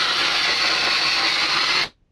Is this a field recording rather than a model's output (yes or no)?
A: yes